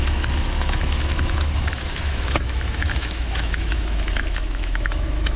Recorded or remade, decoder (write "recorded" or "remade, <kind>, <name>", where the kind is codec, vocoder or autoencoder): remade, autoencoder, DAC-VAE